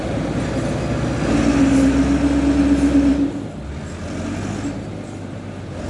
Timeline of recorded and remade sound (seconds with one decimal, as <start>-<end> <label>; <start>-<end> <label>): 0.0-5.9 recorded

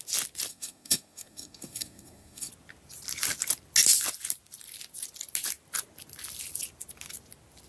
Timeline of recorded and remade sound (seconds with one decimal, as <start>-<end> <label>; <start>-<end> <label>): 0.0-0.5 recorded; 0.5-2.5 remade; 2.5-7.7 recorded

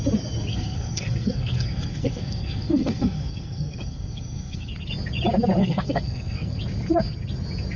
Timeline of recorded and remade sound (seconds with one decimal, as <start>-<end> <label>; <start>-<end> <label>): 0.0-0.5 recorded; 0.5-4.7 remade; 4.7-5.6 recorded; 5.6-6.6 remade; 6.6-7.8 recorded

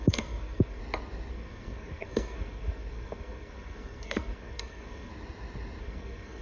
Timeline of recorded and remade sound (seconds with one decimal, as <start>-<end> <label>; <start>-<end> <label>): 0.0-0.8 remade; 0.8-1.3 recorded; 1.3-5.1 remade; 5.1-5.8 recorded; 5.8-6.4 remade

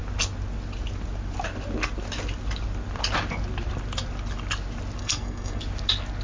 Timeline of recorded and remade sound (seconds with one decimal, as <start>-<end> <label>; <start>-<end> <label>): 0.0-5.0 recorded; 5.0-5.6 remade; 5.6-6.2 recorded

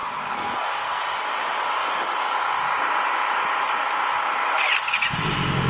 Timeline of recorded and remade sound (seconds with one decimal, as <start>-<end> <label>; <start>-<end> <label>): 0.0-1.0 remade; 1.0-5.7 recorded

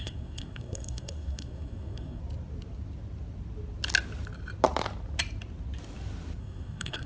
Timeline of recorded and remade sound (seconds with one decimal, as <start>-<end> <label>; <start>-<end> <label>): 0.0-2.2 remade; 2.2-6.4 recorded; 6.4-7.1 remade